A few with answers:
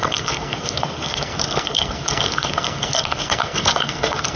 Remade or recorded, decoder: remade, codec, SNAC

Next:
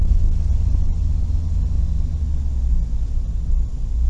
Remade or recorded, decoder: recorded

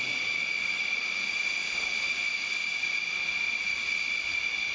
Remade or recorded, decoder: recorded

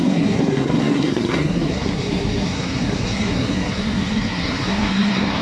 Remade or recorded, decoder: remade, codec, SNAC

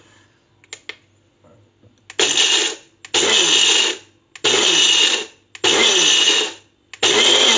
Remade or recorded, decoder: recorded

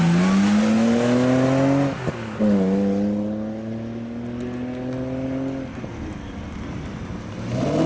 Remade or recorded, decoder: recorded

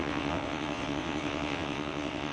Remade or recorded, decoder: remade, vocoder, WaveNeXt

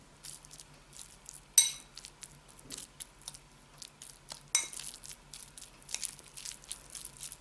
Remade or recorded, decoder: recorded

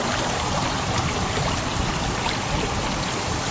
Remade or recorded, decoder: recorded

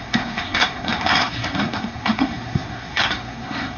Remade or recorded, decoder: remade, codec, SNAC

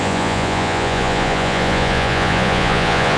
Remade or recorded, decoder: remade, vocoder, Vocos